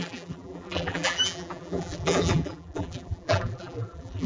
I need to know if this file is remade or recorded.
remade